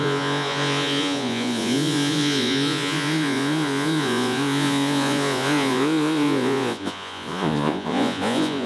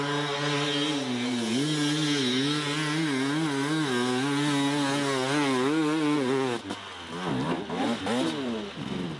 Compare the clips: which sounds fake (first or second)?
first